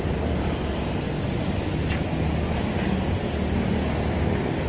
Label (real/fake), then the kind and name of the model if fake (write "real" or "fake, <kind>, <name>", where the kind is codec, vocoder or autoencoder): real